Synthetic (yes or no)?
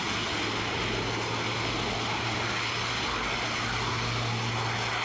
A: no